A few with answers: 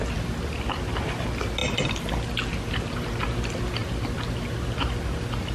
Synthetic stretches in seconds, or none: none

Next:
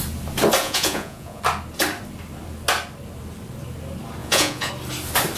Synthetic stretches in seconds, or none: 0.6-1.4 (vocoder, Vocos); 4.2-4.7

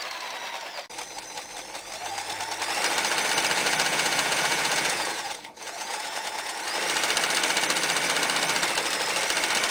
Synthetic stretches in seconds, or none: 3.6-6.6 (vocoder, Vocos)

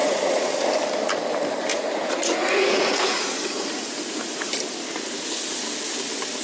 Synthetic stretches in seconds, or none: 0.0-0.7 (vocoder, Vocos); 1.7-4.5

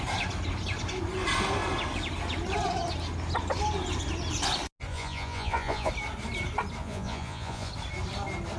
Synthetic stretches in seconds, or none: 4.9-5.9 (vocoder, Vocos); 6.8-7.7

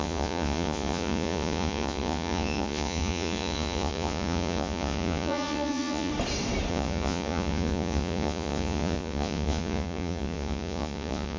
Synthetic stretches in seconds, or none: 0.0-6.1 (vocoder, Vocos); 6.7-11.4

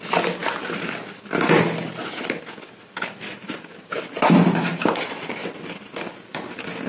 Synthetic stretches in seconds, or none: none